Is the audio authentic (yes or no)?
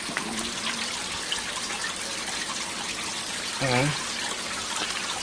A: yes